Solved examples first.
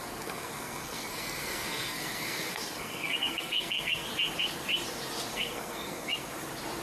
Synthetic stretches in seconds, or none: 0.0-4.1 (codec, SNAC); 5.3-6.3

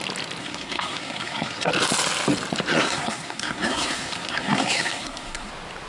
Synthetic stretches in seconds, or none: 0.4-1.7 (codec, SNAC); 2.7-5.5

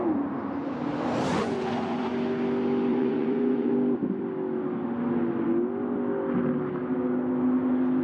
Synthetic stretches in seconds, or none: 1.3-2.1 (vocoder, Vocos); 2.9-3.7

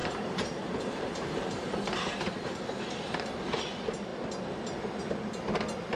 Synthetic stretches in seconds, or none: 0.0-3.6 (vocoder, BigVGAN v2)

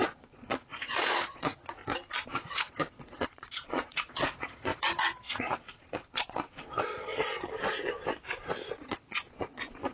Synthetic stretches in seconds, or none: 0.0-1.8 (vocoder, Vocos); 2.3-7.1; 8.8-9.9

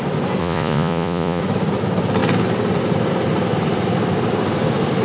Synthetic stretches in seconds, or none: 0.4-1.4 (vocoder, Vocos)

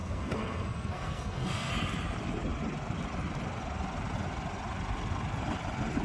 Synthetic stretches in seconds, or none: 0.0-1.7 (codec, SNAC)